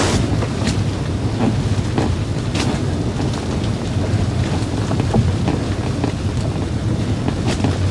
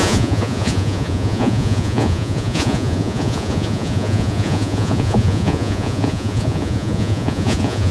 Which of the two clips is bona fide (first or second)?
first